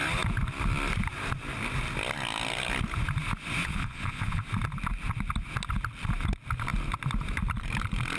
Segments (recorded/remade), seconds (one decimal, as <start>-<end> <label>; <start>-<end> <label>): 0.0-3.6 recorded; 3.6-4.4 remade; 4.4-8.2 recorded